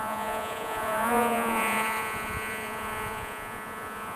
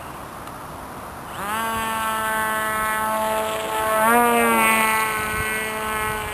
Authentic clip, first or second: second